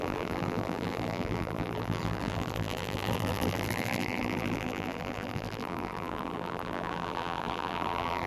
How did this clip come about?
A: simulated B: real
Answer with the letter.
A